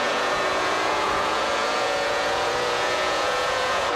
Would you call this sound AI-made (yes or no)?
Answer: yes